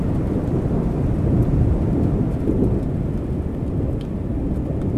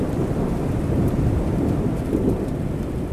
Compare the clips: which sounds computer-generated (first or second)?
second